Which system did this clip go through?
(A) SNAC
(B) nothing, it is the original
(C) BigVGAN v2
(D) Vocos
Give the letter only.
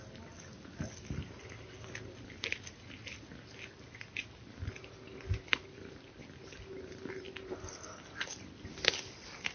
B